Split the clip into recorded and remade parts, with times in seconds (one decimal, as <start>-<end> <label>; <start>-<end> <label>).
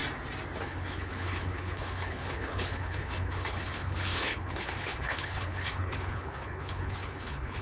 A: 0.0-0.6 recorded; 0.6-7.6 remade